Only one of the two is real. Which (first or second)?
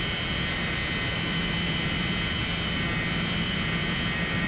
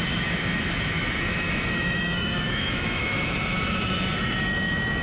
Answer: first